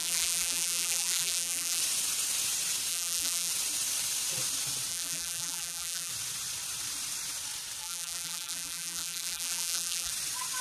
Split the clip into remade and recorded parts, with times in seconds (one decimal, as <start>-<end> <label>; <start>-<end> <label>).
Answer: 0.0-1.8 remade; 1.8-2.9 recorded; 2.9-3.5 remade; 3.5-4.9 recorded; 4.9-6.1 remade; 6.1-7.8 recorded; 7.8-10.1 remade; 10.1-10.6 recorded